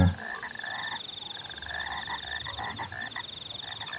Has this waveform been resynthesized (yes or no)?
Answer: no